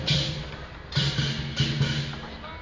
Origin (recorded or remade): recorded